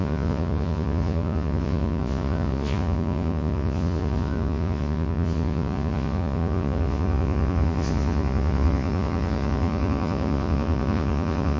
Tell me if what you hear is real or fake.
fake